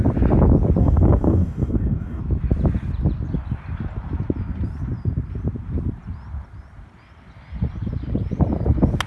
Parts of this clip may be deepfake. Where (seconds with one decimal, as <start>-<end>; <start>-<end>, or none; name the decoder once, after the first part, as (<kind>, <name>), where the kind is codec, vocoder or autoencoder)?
0.8-2.2 (codec, DAC)